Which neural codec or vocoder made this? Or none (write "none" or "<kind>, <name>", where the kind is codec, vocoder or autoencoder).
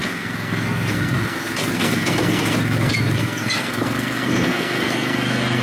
codec, SNAC